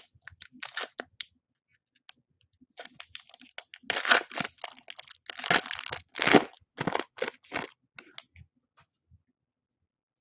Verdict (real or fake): real